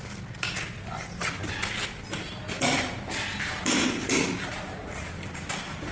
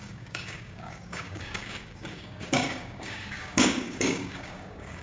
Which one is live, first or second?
first